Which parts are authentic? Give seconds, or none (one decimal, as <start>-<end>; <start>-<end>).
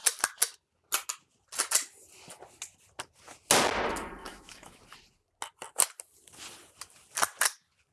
0.0-4.2; 4.8-7.9